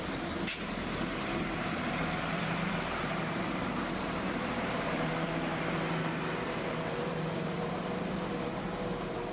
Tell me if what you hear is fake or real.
fake